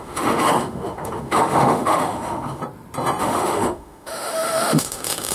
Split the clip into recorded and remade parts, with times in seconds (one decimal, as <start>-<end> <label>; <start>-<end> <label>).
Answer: 0.0-2.6 remade; 2.6-3.2 recorded; 3.2-5.3 remade